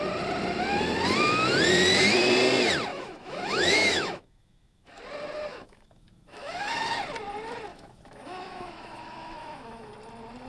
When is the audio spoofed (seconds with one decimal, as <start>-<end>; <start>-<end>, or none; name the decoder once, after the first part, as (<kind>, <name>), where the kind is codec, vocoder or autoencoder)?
2.9-5.0 (autoencoder, DAC-VAE); 5.5-6.9; 7.7-9.9